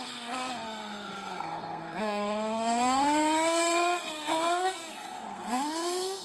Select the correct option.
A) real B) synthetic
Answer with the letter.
B